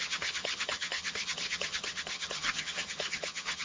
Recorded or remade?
remade